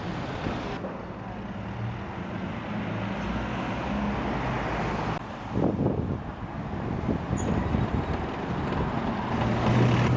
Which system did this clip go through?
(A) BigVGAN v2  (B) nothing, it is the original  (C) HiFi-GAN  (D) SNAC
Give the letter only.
B